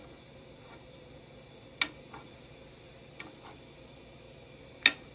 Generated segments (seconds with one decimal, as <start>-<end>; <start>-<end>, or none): none